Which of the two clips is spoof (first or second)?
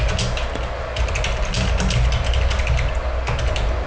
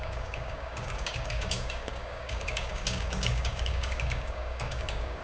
second